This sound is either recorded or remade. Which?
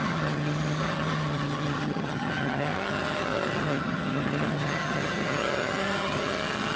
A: remade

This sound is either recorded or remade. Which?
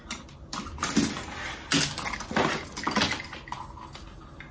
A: recorded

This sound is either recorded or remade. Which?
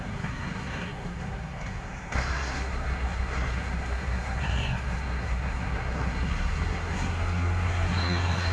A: remade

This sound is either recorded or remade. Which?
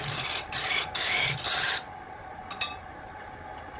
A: recorded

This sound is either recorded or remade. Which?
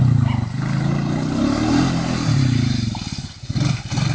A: recorded